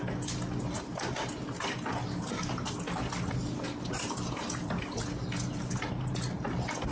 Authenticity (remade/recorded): recorded